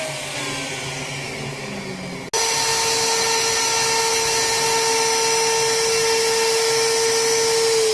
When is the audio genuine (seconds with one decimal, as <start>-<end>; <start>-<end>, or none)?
0.0-7.9